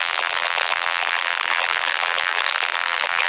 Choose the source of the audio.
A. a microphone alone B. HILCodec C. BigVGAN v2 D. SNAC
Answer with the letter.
C